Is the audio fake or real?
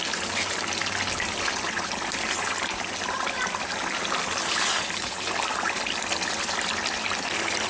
real